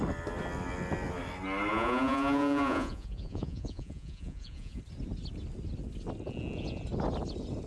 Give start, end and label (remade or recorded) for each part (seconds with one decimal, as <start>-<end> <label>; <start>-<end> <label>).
0.0-1.7 recorded; 1.7-4.8 remade; 4.8-7.7 recorded